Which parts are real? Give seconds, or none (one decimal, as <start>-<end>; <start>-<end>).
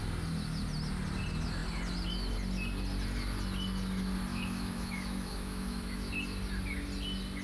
0.0-4.3; 6.1-7.4